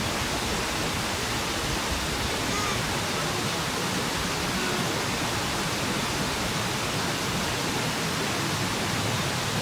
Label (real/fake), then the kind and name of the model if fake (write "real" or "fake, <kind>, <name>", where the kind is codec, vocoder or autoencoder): real